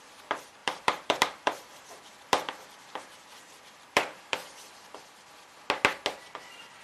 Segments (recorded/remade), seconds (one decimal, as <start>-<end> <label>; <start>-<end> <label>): 0.0-0.6 recorded; 0.6-4.7 remade; 4.7-6.8 recorded